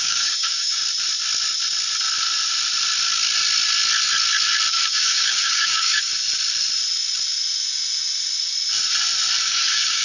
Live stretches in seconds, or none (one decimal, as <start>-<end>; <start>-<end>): 0.8-4.7; 6.1-9.4